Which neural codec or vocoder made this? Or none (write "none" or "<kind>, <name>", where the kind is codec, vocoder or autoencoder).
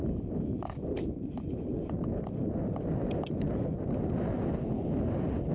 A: none